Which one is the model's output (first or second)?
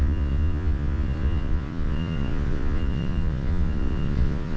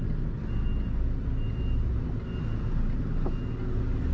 first